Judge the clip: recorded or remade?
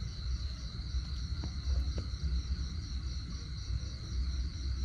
recorded